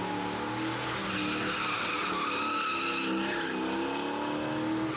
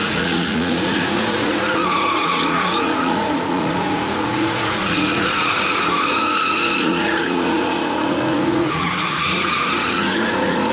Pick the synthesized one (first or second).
second